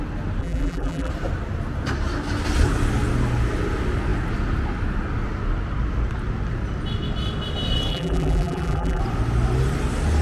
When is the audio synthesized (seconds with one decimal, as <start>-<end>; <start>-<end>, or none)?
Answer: 0.4-1.1; 7.9-9.0